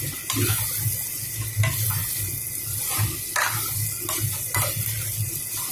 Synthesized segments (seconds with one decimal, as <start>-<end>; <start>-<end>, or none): none